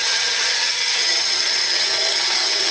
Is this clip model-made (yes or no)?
yes